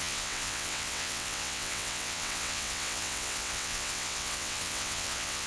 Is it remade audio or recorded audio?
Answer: remade